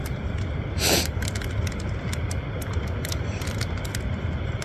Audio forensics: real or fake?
real